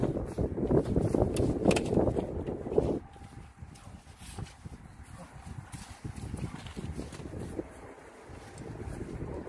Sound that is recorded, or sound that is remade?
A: recorded